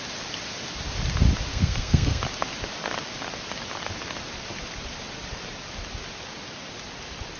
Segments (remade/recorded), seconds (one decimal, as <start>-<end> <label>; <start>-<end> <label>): 0.0-1.5 recorded; 1.5-2.2 remade; 2.2-7.4 recorded